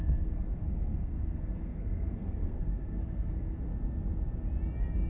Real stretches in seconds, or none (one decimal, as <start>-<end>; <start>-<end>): 3.7-5.1